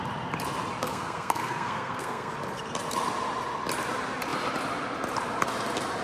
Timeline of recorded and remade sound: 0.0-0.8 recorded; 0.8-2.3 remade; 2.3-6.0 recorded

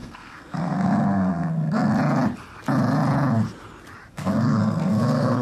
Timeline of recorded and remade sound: 0.0-1.9 remade; 1.9-4.1 recorded; 4.1-5.4 remade

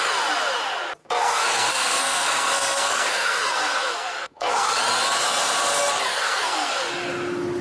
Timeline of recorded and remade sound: 0.0-1.0 recorded; 1.0-4.8 remade; 4.8-6.1 recorded; 6.1-6.9 remade; 6.9-7.6 recorded

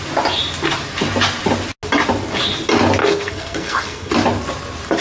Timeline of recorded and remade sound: 0.0-3.0 recorded; 3.0-4.1 remade; 4.1-5.0 recorded

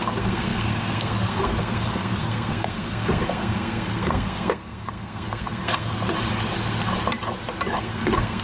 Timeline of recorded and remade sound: 0.0-5.9 remade; 5.9-7.8 recorded; 7.8-8.4 remade